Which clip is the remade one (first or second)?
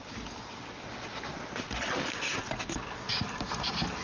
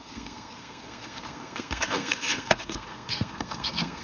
second